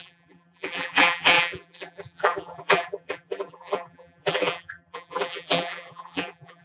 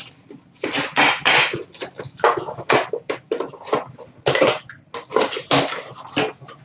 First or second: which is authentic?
second